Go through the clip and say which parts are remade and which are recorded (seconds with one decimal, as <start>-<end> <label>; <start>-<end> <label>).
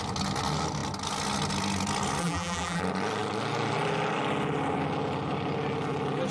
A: 0.0-2.2 recorded; 2.2-2.8 remade; 2.8-6.3 recorded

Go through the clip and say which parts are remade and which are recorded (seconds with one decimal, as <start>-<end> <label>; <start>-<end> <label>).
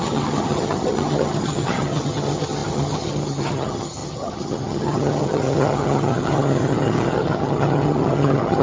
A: 0.0-8.6 remade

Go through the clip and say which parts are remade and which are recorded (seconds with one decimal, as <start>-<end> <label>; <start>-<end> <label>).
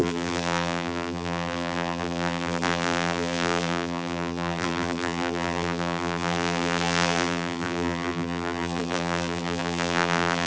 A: 0.0-10.5 remade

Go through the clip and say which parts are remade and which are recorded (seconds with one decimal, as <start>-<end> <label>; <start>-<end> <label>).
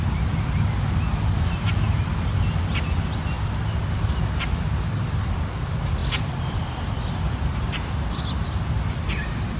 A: 0.0-9.6 recorded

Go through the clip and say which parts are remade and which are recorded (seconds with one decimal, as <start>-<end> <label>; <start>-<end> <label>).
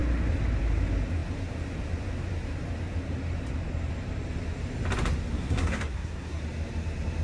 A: 0.0-5.3 recorded; 5.3-6.4 remade; 6.4-7.2 recorded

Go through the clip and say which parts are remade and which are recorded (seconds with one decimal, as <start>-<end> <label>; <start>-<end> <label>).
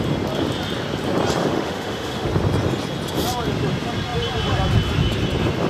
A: 0.0-1.4 recorded; 1.4-2.3 remade; 2.3-5.7 recorded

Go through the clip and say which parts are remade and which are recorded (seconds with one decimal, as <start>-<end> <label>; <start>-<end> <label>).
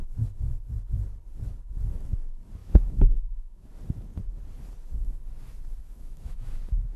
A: 0.0-2.6 recorded; 2.6-3.7 remade; 3.7-5.8 recorded; 5.8-6.6 remade; 6.6-7.0 recorded